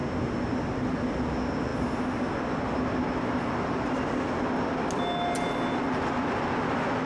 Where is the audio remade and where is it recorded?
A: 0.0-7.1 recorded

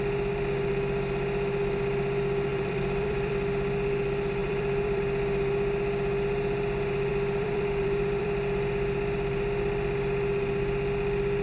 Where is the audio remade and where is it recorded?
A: 0.0-2.5 recorded; 2.5-3.3 remade; 3.3-4.4 recorded; 4.4-5.0 remade; 5.0-7.1 recorded; 7.1-8.3 remade; 8.3-11.4 recorded